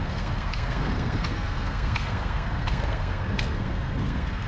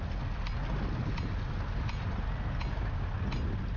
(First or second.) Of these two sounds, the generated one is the first